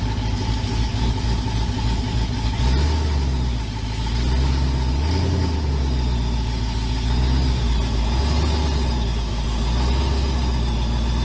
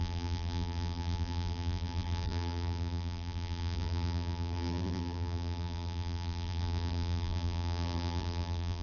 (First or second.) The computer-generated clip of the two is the second